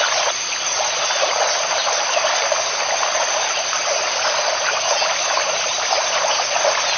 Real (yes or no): yes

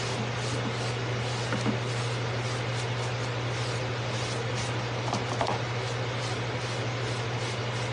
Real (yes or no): yes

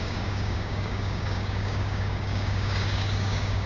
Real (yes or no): no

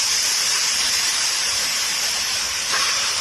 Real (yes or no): no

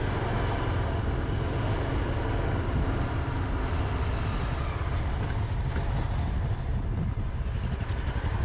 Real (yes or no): yes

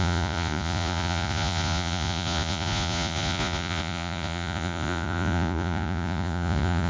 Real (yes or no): no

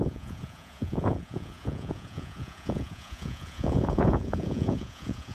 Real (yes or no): no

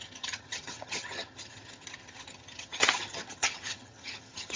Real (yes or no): no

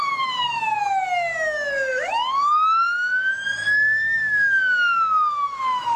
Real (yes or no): no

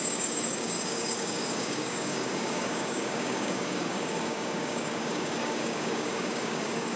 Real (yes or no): no